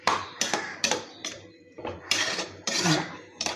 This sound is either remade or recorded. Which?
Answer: remade